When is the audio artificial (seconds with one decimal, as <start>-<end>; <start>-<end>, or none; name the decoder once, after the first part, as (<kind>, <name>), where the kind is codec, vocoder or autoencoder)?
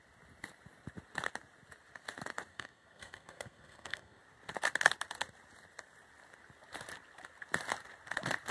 2.5-4.2 (codec, SNAC)